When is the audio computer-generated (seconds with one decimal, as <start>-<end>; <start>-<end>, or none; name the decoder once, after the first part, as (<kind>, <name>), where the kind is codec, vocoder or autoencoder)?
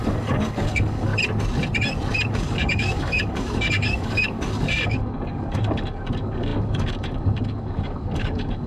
0.0-1.1 (codec, DAC); 2.3-8.7